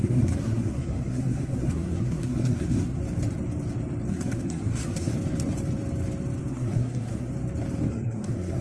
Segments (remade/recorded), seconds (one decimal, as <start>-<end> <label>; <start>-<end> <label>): 0.0-3.0 remade; 3.0-4.1 recorded; 4.1-5.1 remade; 5.1-6.5 recorded; 6.5-7.3 remade; 7.3-7.9 recorded; 7.9-8.6 remade